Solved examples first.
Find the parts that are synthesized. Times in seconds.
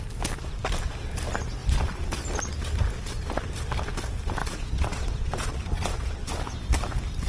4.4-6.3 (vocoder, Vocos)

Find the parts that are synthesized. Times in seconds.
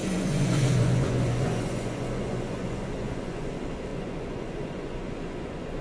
0.0-3.5 (vocoder, Vocos); 3.9-5.8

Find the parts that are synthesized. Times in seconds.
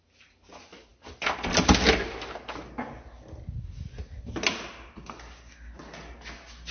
none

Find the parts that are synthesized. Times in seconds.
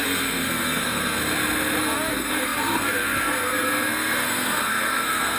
0.0-1.2 (codec, SNAC); 1.8-5.4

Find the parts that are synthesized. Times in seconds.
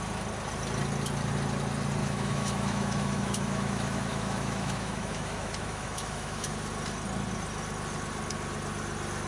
2.0-6.5 (autoencoder, DAC-VAE)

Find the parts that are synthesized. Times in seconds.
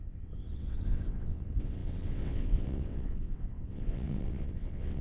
0.0-5.0 (vocoder, WaveNeXt)